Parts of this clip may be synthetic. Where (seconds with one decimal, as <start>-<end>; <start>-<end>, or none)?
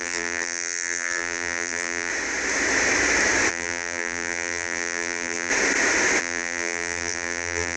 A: 0.0-2.1; 3.5-5.5; 6.2-7.8